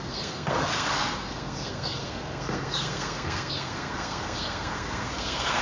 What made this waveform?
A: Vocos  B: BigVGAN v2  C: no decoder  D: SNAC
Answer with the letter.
D